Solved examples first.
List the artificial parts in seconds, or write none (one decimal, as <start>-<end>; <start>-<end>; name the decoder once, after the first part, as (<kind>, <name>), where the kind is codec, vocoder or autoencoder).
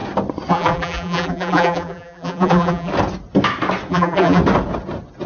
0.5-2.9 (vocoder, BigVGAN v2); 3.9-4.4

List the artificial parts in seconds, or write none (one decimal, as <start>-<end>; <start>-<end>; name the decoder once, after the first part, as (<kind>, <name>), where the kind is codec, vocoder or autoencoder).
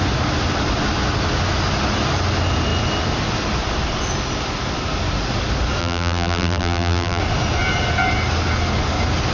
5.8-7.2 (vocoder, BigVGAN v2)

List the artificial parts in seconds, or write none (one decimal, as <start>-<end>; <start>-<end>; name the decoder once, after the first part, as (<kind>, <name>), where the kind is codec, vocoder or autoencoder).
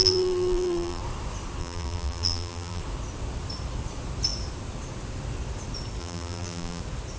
0.0-1.0 (vocoder, BigVGAN v2); 1.6-2.8; 6.0-6.8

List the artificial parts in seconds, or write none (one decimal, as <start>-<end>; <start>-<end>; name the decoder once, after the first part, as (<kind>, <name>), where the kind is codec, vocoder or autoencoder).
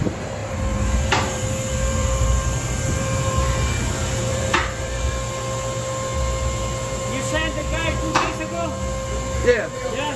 0.4-5.1 (vocoder, BigVGAN v2); 7.6-8.4; 9.4-10.2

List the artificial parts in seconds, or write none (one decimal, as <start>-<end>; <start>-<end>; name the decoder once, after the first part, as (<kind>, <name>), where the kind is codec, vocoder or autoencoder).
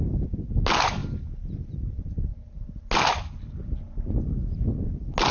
none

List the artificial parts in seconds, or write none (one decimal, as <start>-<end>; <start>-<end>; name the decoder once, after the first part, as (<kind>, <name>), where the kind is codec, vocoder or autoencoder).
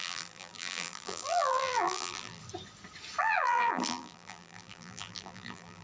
0.0-2.4 (vocoder, BigVGAN v2); 3.2-5.8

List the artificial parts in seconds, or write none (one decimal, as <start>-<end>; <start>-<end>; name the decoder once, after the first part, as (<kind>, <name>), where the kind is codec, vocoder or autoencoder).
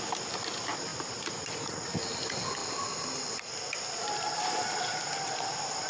2.6-5.4 (vocoder, BigVGAN v2)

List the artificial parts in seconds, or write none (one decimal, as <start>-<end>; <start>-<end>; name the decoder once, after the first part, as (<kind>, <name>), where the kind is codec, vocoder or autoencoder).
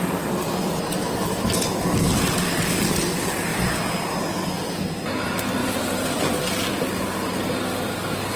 5.6-6.7 (vocoder, BigVGAN v2)